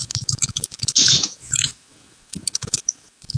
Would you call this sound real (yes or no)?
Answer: no